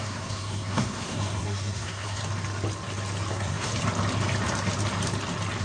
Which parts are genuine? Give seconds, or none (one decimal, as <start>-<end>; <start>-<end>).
2.2-3.3; 3.7-5.6